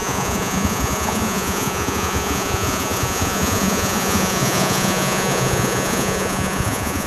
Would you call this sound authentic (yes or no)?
no